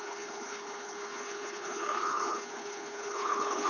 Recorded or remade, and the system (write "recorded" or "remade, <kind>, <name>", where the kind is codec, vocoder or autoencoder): remade, codec, HILCodec